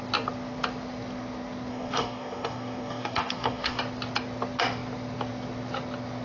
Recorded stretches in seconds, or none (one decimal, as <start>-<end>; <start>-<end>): 0.0-1.7; 3.8-6.2